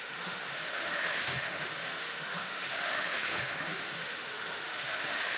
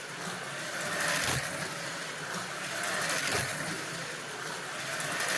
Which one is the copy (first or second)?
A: first